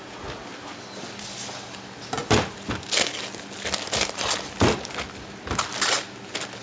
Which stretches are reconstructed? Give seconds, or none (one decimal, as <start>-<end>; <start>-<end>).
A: none